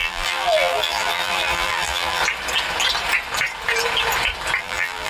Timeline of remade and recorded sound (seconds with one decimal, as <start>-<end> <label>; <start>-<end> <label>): 0.0-2.2 remade; 2.2-4.6 recorded; 4.6-5.1 remade